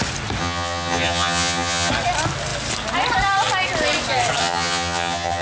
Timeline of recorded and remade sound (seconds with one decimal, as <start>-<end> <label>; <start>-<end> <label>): 0.0-0.4 recorded; 0.4-1.9 remade; 1.9-4.4 recorded; 4.4-5.4 remade